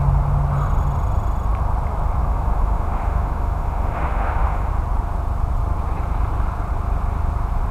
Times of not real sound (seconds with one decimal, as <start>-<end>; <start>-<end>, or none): 2.2-4.7